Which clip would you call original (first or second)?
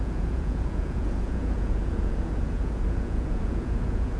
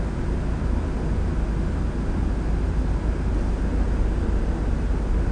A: second